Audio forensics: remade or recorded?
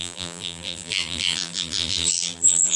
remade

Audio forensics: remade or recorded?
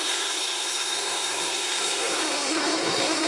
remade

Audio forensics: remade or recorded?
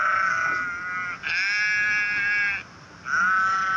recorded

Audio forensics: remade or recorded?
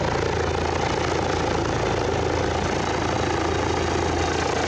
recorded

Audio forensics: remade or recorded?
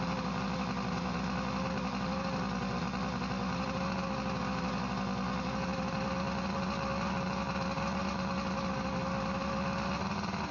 recorded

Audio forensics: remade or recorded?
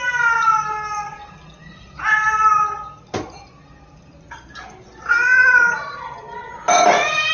recorded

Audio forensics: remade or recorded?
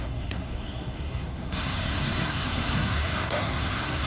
remade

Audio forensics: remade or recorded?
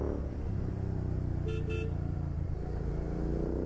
recorded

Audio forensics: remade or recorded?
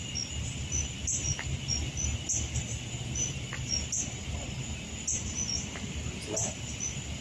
recorded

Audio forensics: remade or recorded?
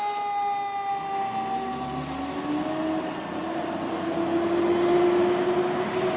recorded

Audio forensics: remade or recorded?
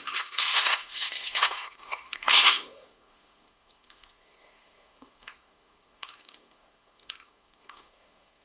remade